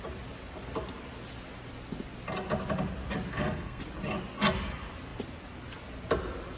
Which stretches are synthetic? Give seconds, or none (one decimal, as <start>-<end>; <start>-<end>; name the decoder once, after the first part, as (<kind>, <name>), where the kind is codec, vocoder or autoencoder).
3.3-3.8 (codec, SNAC)